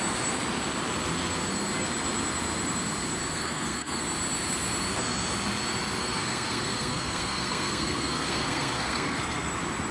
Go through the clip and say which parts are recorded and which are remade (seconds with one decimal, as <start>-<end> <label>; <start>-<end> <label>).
0.0-3.3 recorded; 3.3-4.0 remade; 4.0-6.0 recorded; 6.0-9.5 remade; 9.5-9.9 recorded